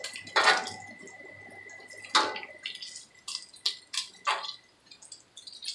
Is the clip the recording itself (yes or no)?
yes